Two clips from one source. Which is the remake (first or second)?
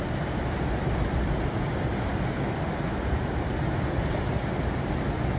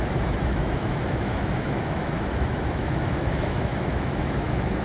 second